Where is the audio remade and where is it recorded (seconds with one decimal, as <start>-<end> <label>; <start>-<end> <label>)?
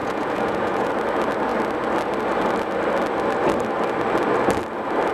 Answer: 0.0-0.9 remade; 0.9-5.1 recorded